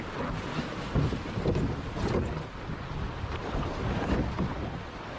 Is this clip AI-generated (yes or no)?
no